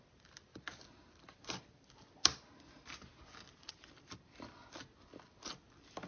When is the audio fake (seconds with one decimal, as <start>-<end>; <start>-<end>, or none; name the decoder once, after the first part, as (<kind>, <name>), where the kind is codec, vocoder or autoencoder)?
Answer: 0.5-1.9 (vocoder, BigVGAN v2)